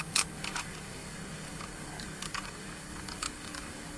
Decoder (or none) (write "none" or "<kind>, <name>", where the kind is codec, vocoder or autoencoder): codec, DAC